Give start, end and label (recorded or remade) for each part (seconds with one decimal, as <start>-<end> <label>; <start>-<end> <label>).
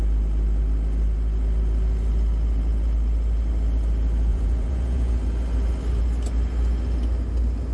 0.0-4.3 recorded; 4.3-5.1 remade; 5.1-7.7 recorded